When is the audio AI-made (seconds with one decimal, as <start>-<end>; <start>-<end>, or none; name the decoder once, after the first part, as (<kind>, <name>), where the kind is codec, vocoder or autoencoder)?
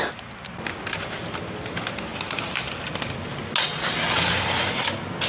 none